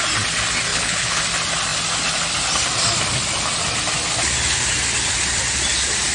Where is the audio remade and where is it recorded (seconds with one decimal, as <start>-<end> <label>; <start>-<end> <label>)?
0.0-0.7 recorded; 0.7-1.2 remade; 1.2-6.1 recorded